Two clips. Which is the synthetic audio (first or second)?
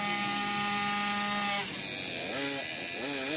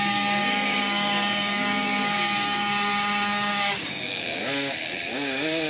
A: second